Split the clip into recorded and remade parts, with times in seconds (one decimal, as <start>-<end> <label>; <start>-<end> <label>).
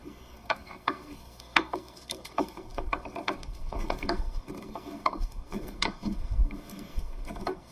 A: 0.0-7.7 remade